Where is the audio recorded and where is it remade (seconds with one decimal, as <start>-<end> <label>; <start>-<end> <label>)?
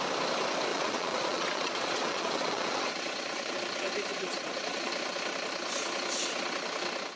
0.0-0.7 recorded; 0.7-3.5 remade; 3.5-4.1 recorded; 4.1-4.9 remade; 4.9-7.2 recorded